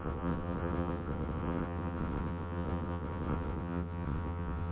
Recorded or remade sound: remade